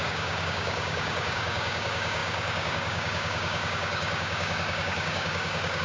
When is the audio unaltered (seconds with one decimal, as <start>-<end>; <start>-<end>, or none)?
none